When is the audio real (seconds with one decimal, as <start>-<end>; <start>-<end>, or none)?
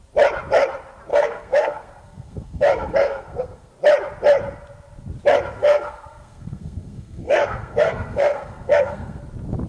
0.0-1.1; 3.7-5.6; 9.2-9.7